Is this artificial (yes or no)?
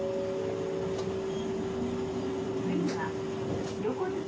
no